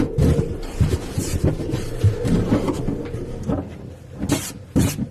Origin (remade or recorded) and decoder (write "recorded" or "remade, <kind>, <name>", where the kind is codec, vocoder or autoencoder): recorded